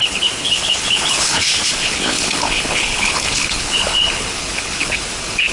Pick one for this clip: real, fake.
fake